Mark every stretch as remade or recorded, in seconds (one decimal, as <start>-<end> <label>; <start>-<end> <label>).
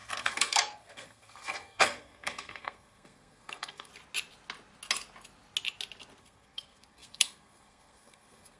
0.0-3.9 remade; 3.9-6.2 recorded; 6.2-8.6 remade